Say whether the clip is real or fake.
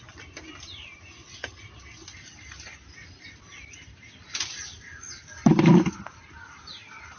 real